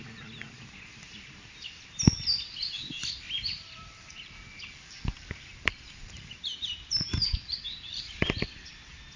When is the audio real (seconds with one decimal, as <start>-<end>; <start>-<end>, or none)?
0.0-3.5; 8.0-9.2